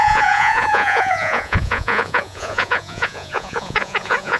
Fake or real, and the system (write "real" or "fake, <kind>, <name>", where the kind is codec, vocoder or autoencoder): fake, vocoder, Vocos